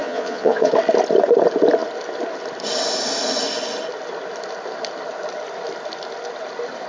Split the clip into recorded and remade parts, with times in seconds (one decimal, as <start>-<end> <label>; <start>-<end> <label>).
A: 0.0-0.7 remade; 0.7-6.9 recorded